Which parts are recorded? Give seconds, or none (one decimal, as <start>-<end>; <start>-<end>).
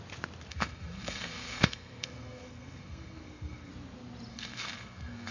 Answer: 0.0-0.5; 3.7-4.3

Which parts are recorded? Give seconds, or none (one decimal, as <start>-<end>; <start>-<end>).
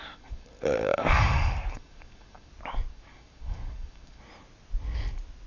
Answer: 2.5-2.9; 4.2-5.5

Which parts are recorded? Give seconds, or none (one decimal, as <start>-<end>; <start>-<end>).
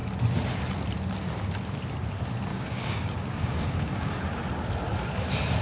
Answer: 0.0-2.5; 4.1-5.6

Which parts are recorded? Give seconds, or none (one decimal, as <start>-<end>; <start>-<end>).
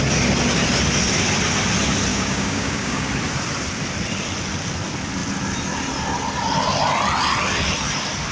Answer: 0.0-2.1; 3.1-8.3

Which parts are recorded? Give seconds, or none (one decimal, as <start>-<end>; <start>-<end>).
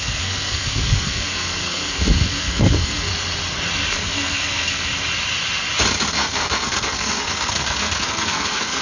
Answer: 3.1-3.9; 4.9-6.1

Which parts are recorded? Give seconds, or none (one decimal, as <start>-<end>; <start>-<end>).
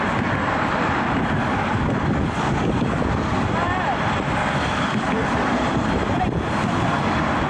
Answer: 0.0-1.4; 3.0-4.4; 5.1-7.5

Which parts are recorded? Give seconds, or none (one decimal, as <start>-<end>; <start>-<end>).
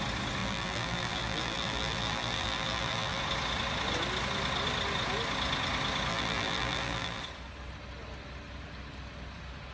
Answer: 0.0-0.4; 3.2-6.1; 7.2-9.7